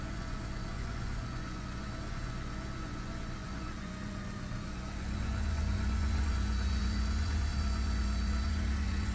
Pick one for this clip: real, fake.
fake